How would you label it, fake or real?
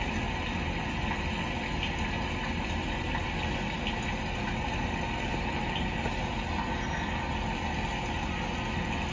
real